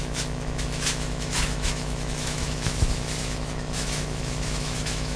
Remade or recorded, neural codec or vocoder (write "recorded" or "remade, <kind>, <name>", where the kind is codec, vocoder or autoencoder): remade, autoencoder, DAC-VAE